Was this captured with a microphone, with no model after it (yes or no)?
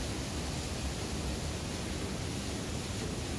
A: no